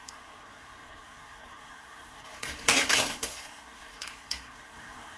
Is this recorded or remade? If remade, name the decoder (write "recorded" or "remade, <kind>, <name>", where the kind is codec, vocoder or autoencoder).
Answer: remade, codec, SNAC